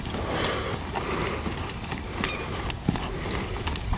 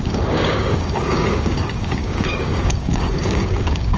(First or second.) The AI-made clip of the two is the second